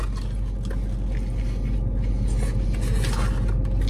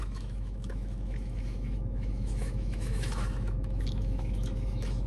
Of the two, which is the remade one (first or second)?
second